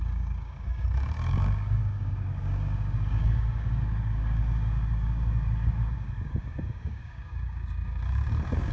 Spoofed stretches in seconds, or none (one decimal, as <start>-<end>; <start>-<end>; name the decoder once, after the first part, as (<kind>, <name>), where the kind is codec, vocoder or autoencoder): 0.0-8.7 (codec, DAC)

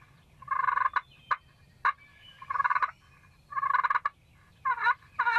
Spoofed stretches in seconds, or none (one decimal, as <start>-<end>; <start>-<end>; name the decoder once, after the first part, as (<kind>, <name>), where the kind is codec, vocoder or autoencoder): 2.1-2.8 (codec, DAC)

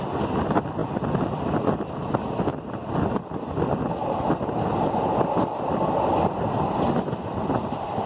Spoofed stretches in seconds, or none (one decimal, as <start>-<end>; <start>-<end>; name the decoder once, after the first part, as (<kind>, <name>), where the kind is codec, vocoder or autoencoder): none

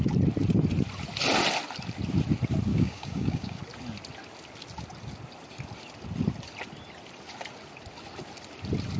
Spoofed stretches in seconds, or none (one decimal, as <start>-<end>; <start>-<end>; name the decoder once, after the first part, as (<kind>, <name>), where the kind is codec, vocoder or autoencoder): 2.7-3.6 (codec, DAC)

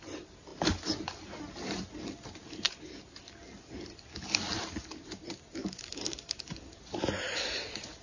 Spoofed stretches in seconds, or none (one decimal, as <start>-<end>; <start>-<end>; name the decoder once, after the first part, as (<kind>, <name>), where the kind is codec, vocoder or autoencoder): 5.6-6.7 (codec, DAC)

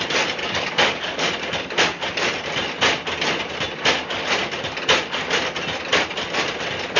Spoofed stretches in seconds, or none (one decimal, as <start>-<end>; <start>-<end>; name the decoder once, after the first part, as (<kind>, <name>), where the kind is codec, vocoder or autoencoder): 0.4-1.3 (codec, DAC)

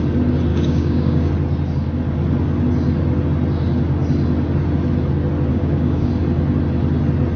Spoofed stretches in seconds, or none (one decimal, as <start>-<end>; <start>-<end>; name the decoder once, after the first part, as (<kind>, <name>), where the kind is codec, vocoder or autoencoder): 0.5-1.3 (codec, DAC); 5.5-6.1

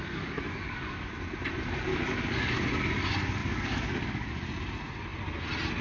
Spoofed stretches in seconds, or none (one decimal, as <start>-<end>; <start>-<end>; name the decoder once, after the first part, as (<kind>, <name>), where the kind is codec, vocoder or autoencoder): 0.0-1.1 (codec, DAC); 1.9-2.5; 3.4-4.3